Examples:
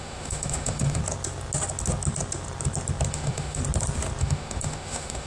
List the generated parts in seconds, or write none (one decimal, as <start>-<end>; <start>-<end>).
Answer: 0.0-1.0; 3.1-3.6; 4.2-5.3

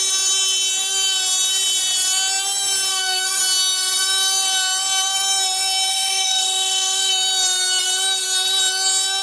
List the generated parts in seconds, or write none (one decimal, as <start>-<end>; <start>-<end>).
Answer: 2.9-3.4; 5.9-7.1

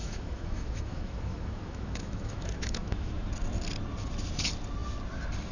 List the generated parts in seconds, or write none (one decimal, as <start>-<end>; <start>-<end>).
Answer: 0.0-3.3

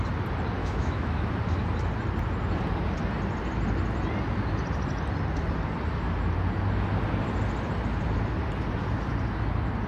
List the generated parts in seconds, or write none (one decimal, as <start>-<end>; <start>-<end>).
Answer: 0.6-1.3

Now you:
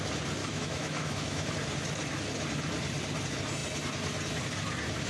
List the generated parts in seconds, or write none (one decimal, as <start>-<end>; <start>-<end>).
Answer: 0.4-1.5

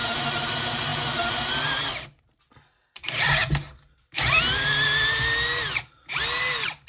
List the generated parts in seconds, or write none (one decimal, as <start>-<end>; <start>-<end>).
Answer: none